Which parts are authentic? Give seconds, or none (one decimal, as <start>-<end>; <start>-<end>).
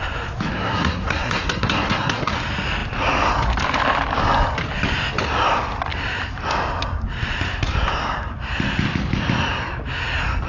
0.0-0.5; 2.3-10.5